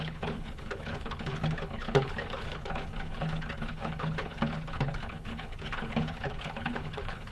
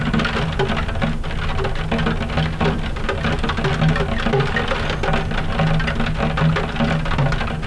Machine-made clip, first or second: first